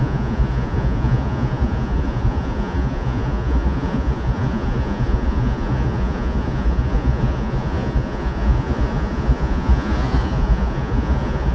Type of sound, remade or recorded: remade